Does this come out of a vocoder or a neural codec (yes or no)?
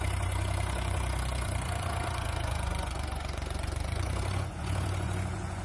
yes